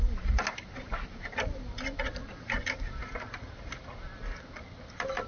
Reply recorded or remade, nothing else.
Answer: recorded